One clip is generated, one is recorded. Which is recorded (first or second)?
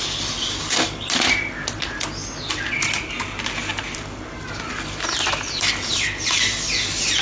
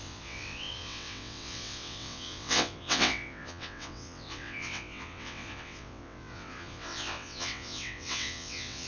first